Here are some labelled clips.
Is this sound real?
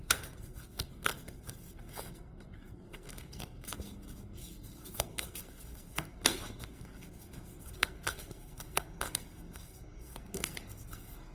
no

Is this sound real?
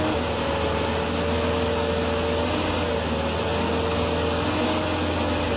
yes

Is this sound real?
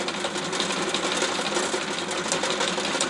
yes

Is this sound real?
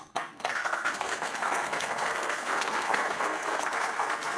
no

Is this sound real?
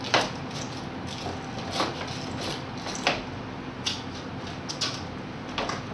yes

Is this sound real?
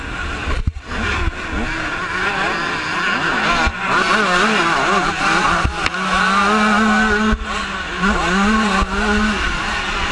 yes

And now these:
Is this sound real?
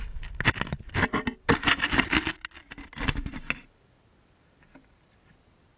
yes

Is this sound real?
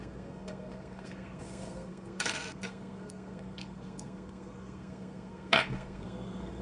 no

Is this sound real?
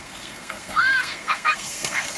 no